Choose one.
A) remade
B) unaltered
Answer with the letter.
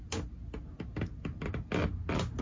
B